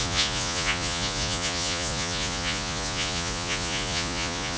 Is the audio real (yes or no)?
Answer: no